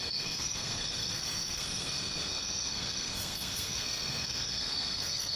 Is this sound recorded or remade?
remade